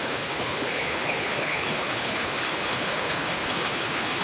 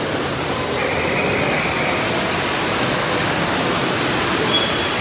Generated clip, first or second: first